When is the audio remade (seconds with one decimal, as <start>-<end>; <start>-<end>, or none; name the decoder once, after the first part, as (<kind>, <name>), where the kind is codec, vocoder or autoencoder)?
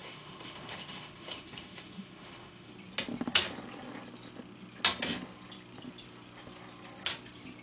0.0-2.7 (autoencoder, DAC-VAE)